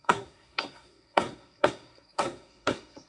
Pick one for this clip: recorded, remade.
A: remade